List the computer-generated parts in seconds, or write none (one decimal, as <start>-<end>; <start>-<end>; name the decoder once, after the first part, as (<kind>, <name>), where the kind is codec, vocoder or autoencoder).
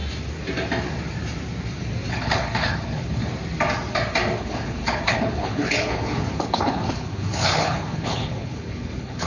2.1-3.2 (codec, HILCodec); 4.4-9.3